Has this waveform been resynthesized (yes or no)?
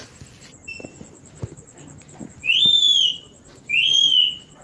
no